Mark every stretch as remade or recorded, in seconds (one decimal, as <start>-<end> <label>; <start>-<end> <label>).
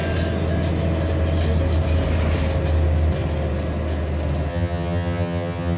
0.0-4.5 recorded; 4.5-5.8 remade